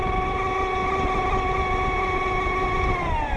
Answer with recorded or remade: recorded